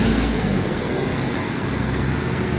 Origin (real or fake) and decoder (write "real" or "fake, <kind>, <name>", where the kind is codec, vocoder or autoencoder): fake, codec, SNAC